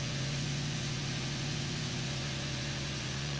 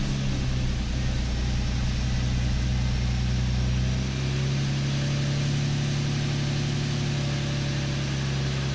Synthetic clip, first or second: first